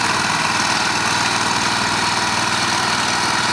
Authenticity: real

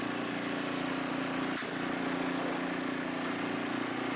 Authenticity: real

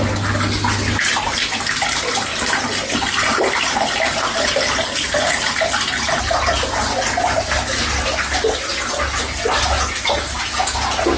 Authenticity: real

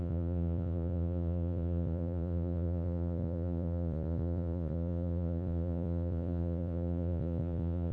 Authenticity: fake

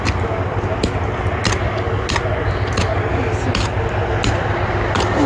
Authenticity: real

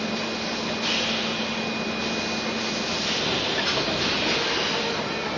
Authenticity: real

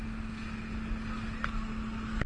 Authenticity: real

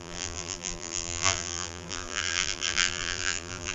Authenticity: fake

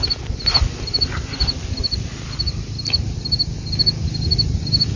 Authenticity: real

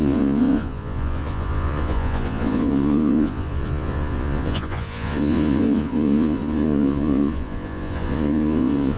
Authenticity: fake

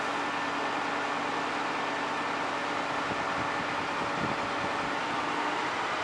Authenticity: real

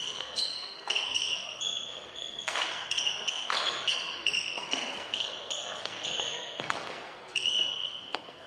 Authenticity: fake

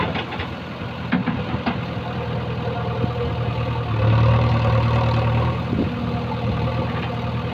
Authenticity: real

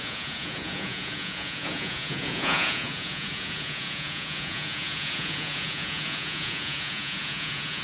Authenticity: fake